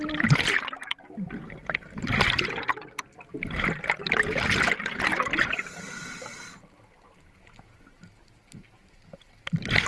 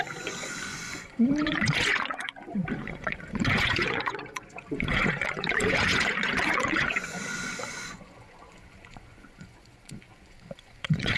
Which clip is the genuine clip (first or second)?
first